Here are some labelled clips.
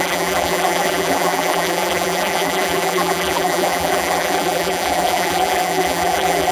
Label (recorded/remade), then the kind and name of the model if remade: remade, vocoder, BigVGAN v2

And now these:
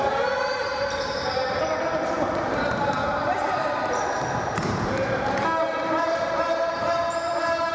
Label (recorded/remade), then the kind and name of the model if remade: remade, vocoder, BigVGAN v2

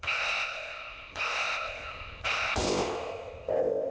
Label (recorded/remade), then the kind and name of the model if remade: remade, codec, ZipCodec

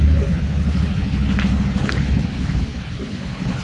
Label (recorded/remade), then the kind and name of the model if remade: remade, codec, HILCodec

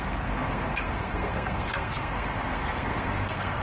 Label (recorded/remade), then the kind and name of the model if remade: remade, codec, SNAC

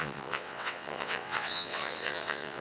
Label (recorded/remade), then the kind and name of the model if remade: remade, vocoder, WaveNeXt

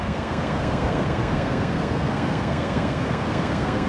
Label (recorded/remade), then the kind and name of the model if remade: remade, codec, SNAC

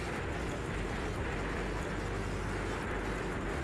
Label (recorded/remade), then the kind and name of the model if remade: recorded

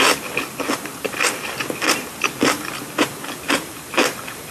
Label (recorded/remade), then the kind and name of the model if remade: remade, vocoder, BigVGAN v2